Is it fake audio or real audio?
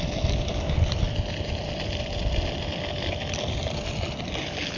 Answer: real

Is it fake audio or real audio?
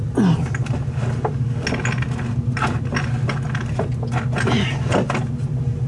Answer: real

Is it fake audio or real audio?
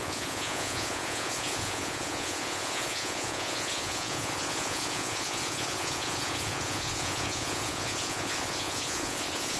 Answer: fake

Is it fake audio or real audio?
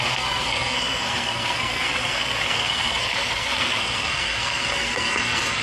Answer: fake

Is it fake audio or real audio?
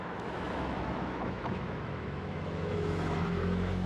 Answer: fake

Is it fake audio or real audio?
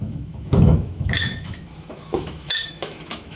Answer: fake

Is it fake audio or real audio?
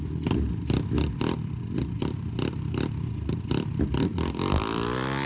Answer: fake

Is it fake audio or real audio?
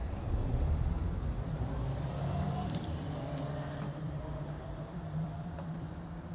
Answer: fake